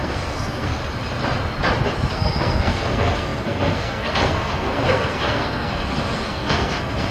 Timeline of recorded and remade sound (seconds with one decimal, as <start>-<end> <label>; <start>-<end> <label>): 0.0-0.8 remade; 0.8-2.1 recorded; 2.1-7.1 remade